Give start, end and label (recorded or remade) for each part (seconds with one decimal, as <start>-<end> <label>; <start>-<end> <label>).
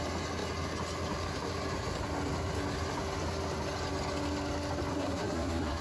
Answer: 0.0-4.9 recorded; 4.9-5.8 remade